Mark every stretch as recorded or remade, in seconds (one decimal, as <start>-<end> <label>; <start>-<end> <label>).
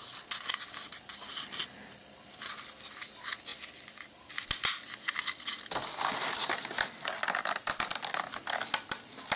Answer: 0.0-9.4 recorded